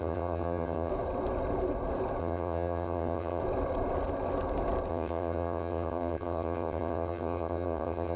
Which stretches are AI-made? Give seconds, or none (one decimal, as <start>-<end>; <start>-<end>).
0.0-0.9; 2.2-3.4; 4.9-8.2